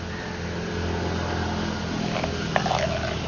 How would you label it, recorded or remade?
recorded